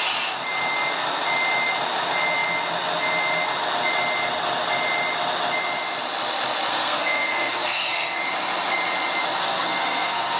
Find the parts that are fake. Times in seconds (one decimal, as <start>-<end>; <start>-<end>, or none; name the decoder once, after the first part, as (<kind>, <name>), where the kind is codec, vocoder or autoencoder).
6.7-8.2 (codec, SNAC); 9.4-10.4